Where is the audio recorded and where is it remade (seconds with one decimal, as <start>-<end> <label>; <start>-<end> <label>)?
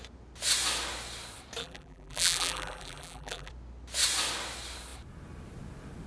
0.0-1.6 recorded; 1.6-3.5 remade; 3.5-6.1 recorded